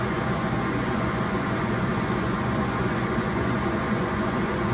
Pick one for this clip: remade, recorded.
remade